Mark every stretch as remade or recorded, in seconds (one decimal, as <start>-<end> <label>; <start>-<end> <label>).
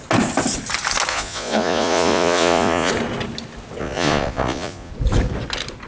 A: 0.0-1.1 recorded; 1.1-2.9 remade; 2.9-3.8 recorded; 3.8-4.9 remade; 4.9-5.9 recorded